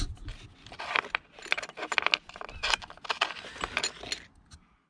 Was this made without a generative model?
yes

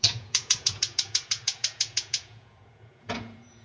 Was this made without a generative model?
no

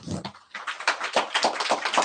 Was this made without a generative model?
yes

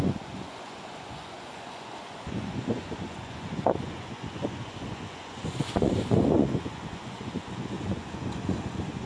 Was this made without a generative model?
no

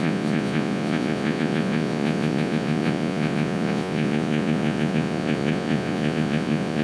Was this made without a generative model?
no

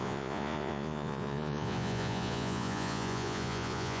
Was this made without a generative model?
no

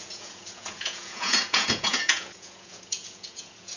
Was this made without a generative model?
no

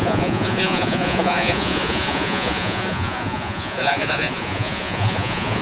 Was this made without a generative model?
no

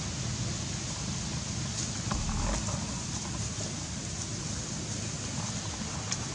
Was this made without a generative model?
yes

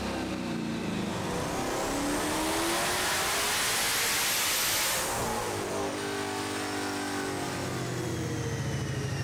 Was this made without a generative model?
yes